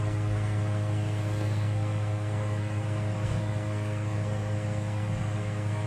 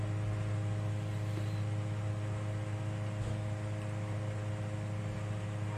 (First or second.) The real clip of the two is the second